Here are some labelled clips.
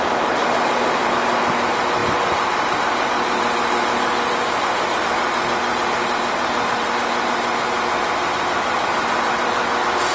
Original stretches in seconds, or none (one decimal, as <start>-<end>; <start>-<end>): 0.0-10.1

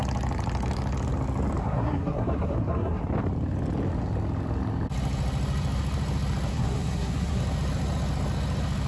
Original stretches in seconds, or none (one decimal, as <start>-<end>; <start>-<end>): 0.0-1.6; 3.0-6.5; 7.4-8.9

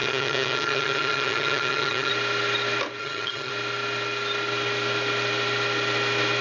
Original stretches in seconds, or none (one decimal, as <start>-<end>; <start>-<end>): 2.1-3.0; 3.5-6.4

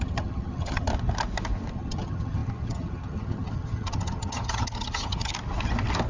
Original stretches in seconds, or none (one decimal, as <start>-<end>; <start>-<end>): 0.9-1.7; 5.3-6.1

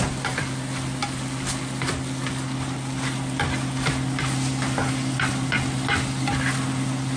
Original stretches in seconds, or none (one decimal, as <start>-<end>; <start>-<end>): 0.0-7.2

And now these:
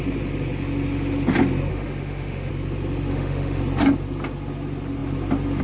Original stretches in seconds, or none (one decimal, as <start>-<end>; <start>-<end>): 0.0-1.7; 2.5-3.1; 3.6-5.6

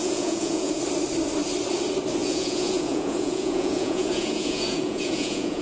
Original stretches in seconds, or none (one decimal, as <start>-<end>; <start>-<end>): 0.8-2.2

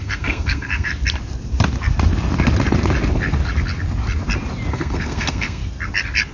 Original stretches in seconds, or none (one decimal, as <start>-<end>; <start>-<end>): 0.9-4.7; 5.6-6.3